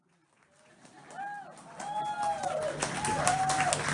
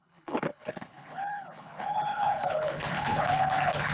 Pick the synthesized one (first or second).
second